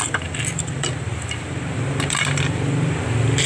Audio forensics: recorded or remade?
remade